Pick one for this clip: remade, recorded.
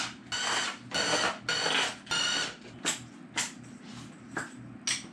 recorded